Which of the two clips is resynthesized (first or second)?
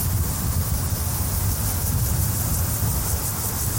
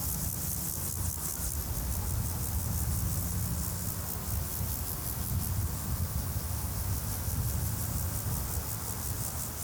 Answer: first